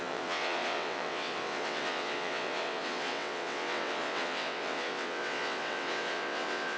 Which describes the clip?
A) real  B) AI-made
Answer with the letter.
B